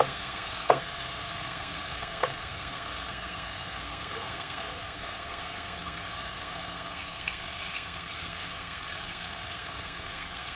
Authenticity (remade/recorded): remade